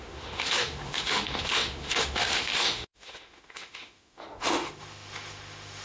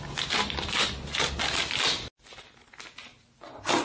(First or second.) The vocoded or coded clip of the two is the first